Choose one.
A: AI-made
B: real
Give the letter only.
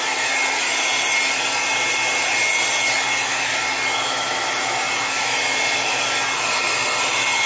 B